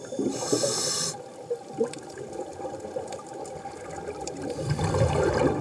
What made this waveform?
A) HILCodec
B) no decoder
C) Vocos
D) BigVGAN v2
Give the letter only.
D